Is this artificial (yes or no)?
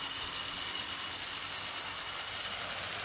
no